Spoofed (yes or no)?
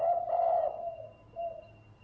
no